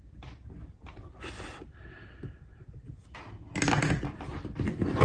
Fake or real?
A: real